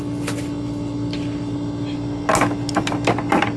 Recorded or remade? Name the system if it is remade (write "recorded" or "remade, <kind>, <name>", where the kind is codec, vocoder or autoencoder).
recorded